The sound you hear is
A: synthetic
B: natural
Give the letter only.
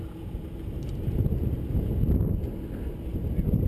B